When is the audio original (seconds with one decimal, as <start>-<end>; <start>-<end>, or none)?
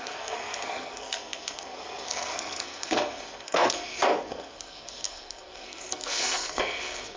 none